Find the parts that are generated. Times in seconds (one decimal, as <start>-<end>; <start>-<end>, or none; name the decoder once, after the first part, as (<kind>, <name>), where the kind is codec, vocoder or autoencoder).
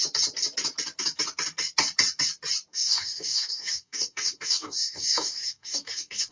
2.7-6.3 (codec, DAC)